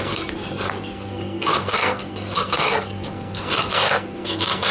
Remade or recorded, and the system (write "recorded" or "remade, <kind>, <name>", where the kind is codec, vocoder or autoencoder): remade, codec, SNAC